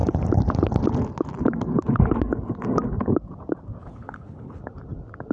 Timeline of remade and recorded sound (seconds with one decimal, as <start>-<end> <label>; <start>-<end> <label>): 0.0-3.8 recorded; 3.8-4.6 remade; 4.6-5.3 recorded